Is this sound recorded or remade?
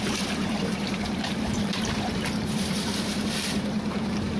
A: remade